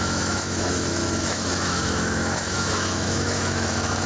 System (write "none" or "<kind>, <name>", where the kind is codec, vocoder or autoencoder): autoencoder, DAC-VAE